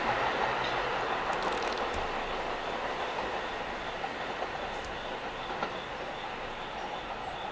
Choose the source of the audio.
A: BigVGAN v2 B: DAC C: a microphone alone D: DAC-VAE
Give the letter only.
C